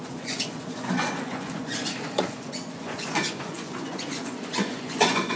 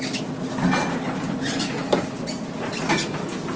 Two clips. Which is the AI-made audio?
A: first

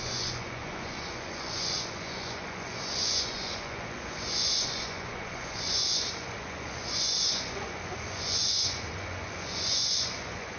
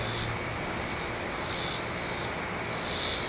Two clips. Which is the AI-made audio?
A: first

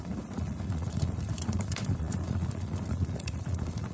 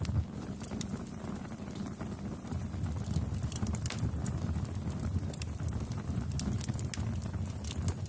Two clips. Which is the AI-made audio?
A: first